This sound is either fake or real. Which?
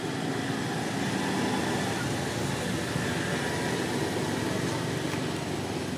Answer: real